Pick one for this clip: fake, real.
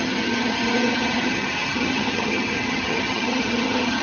fake